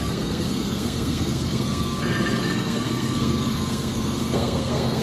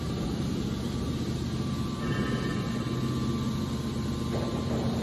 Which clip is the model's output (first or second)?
first